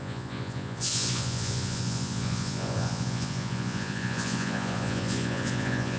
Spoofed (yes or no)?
yes